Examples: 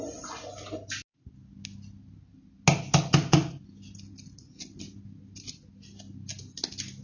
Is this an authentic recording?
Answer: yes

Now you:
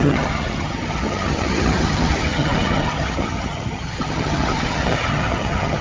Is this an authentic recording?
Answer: no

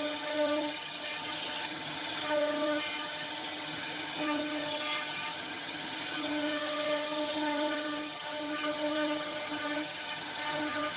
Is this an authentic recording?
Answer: no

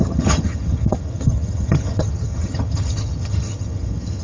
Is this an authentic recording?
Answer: no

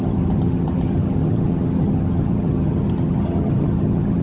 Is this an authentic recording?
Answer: no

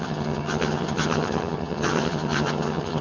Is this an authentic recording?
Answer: no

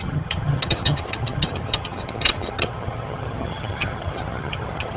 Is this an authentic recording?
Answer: no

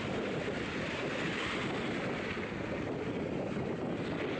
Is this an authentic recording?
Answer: yes